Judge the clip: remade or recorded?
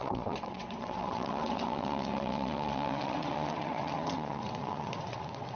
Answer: remade